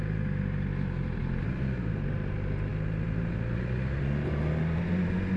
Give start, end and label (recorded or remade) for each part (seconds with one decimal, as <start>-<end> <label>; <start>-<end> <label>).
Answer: 0.0-5.4 recorded